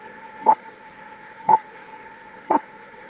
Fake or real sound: fake